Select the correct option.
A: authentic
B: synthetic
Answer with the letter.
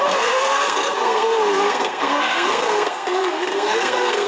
B